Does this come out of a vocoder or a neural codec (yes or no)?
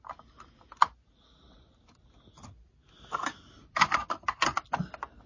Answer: no